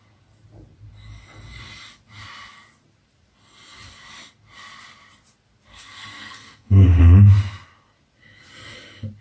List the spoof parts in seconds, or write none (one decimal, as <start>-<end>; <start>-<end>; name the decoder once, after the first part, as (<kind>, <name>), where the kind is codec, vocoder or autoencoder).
5.7-7.0 (codec, SNAC)